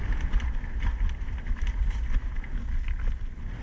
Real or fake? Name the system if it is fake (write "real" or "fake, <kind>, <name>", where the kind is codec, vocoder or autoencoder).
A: real